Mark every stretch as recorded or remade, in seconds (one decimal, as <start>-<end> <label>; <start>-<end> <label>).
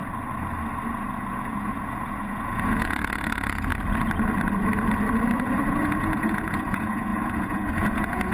0.0-1.3 recorded; 1.3-3.7 remade; 3.7-5.4 recorded; 5.4-8.3 remade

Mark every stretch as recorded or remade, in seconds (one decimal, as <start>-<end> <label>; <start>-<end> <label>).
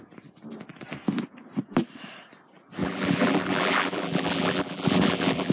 0.0-2.8 recorded; 2.8-5.5 remade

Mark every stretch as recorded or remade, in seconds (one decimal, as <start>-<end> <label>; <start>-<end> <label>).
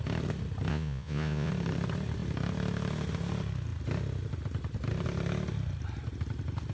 0.0-0.7 recorded; 0.7-1.5 remade; 1.5-6.7 recorded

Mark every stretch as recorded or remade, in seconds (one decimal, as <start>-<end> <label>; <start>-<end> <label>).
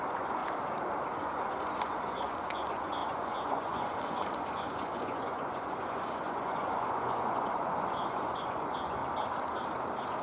0.0-0.4 remade; 0.4-1.2 recorded; 1.2-9.0 remade; 9.0-10.2 recorded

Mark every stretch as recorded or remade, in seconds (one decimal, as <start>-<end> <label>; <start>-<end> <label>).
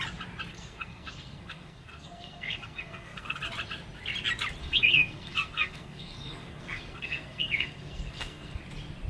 0.0-0.5 recorded; 0.5-3.4 remade; 3.4-4.6 recorded; 4.6-8.6 remade; 8.6-9.1 recorded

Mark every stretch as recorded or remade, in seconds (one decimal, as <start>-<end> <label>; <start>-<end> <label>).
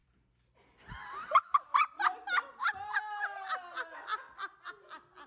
0.0-1.9 remade; 1.9-5.3 recorded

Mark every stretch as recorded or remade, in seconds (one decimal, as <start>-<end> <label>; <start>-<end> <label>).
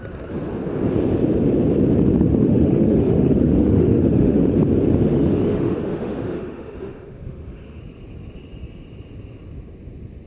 0.0-2.3 recorded; 2.3-4.5 remade; 4.5-5.1 recorded; 5.1-7.8 remade; 7.8-10.3 recorded